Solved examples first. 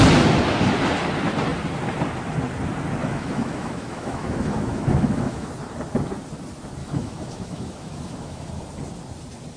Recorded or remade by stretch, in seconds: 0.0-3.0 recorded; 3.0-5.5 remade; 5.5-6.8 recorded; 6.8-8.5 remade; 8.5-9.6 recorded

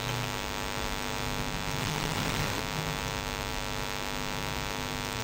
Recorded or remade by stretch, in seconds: 0.0-1.8 recorded; 1.8-2.6 remade; 2.6-5.2 recorded